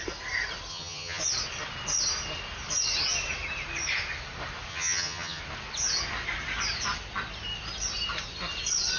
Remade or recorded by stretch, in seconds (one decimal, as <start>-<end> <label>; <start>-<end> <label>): 0.0-0.7 recorded; 0.7-1.2 remade; 1.2-4.7 recorded; 4.7-5.4 remade; 5.4-9.0 recorded